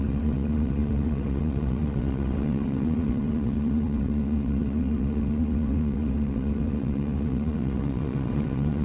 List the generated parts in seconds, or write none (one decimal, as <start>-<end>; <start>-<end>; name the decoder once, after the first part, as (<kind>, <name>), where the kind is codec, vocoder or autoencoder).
0.0-8.8 (vocoder, WaveNeXt)